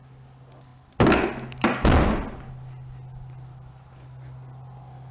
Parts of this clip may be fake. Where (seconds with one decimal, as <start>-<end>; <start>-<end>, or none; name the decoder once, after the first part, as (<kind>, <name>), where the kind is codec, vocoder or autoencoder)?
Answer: none